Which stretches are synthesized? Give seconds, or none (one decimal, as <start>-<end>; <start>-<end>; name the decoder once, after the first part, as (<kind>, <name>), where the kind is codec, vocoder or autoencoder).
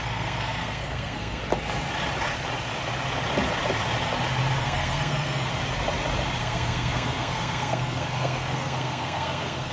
0.0-1.4 (codec, SNAC); 4.6-5.5; 6.4-9.7